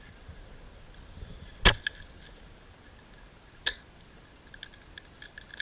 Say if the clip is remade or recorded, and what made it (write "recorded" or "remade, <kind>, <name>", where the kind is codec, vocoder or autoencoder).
recorded